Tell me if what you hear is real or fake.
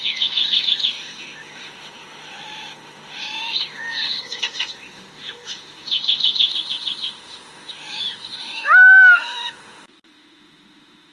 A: fake